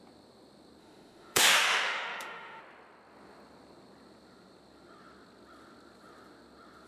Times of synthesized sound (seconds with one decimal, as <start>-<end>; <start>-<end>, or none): 0.8-2.6